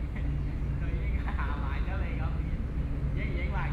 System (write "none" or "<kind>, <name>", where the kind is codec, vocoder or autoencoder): none